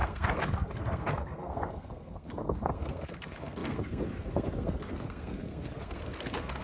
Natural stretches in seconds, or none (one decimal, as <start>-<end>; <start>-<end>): none